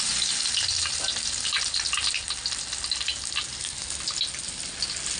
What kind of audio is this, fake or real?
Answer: real